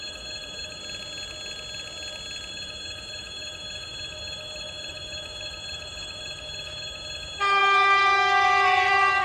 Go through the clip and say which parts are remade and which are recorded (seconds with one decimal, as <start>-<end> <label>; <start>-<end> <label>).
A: 0.0-0.8 remade; 0.8-2.5 recorded; 2.5-9.2 remade